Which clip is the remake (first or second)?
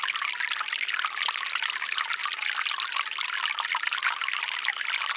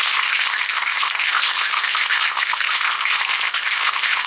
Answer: second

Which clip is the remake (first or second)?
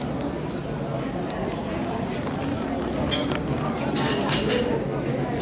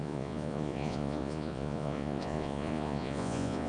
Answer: second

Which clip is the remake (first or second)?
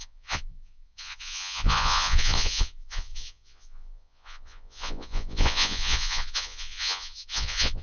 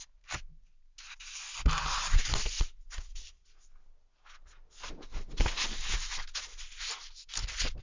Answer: first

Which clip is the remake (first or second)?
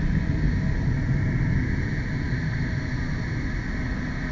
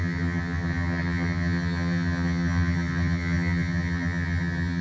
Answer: second